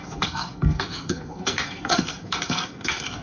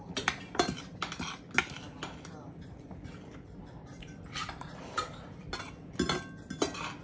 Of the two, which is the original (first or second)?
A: second